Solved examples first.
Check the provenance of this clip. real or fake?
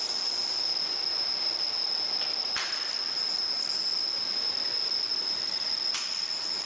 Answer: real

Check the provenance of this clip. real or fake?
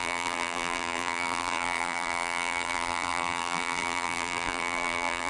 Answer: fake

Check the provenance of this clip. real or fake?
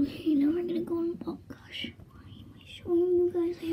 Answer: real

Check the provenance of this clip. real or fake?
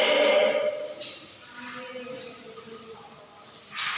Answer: real